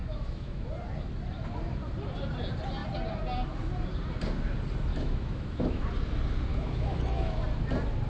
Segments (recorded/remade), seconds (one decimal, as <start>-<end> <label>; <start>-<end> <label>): 0.0-0.7 remade; 0.7-4.9 recorded; 4.9-5.8 remade; 5.8-6.5 recorded; 6.5-7.4 remade; 7.4-8.1 recorded